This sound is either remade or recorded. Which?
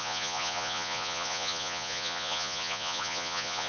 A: remade